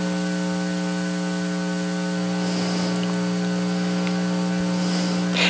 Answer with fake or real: real